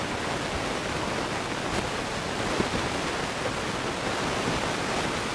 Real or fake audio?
real